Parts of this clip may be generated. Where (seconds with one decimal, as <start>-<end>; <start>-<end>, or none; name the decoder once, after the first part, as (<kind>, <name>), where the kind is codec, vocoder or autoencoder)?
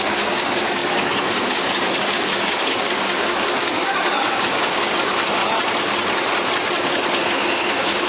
0.0-5.4 (codec, DAC); 7.2-8.1